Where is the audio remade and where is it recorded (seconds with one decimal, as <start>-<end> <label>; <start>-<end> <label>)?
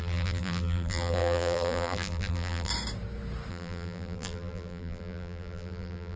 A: 0.0-2.7 remade; 2.7-3.5 recorded; 3.5-6.2 remade